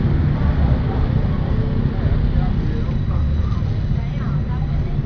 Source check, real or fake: real